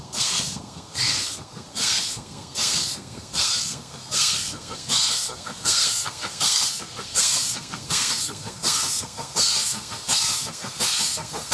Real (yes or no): no